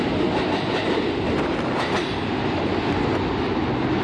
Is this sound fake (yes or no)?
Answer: no